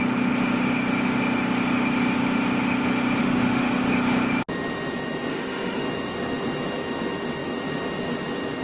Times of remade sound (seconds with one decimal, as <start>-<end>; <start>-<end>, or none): 3.2-3.8; 5.3-5.8

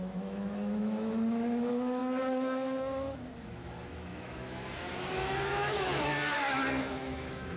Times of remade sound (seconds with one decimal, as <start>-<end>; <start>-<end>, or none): 0.0-6.1; 6.9-7.6